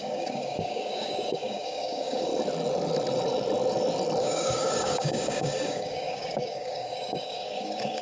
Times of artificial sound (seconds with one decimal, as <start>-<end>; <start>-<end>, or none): 0.0-2.3; 4.2-8.0